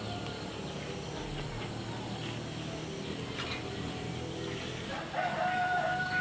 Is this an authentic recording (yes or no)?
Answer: yes